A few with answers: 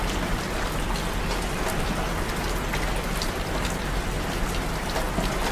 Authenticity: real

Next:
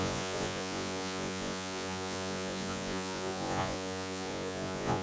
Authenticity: fake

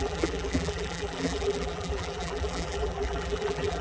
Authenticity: fake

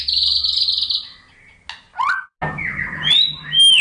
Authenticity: real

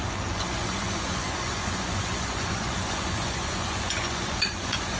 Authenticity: fake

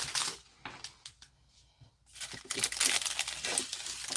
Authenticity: real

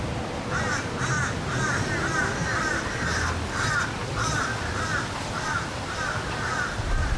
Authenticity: fake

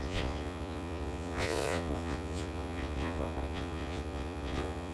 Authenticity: fake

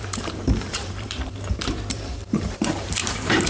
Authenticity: fake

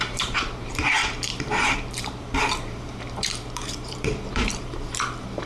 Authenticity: fake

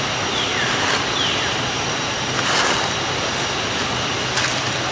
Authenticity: real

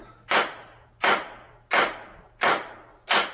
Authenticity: real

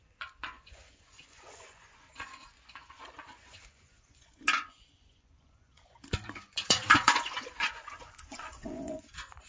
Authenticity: fake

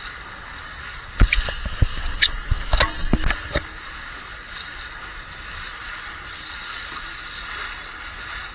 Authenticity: real